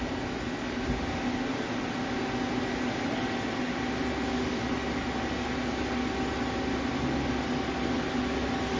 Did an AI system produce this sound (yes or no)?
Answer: no